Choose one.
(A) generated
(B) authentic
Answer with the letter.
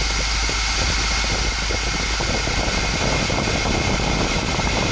B